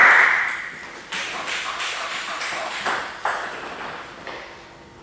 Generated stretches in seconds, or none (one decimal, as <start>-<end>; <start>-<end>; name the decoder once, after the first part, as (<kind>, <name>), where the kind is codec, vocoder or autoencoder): 0.0-3.0 (vocoder, BigVGAN v2)